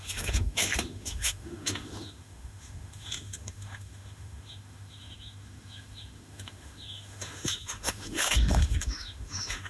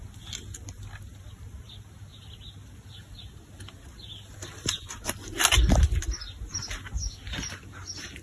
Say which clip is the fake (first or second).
first